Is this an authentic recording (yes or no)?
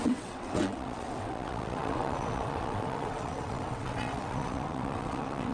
no